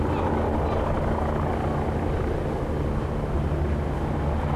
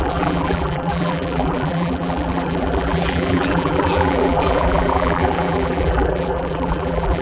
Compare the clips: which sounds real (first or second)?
first